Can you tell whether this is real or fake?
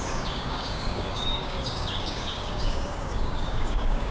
fake